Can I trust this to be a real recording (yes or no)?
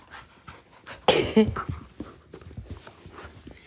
yes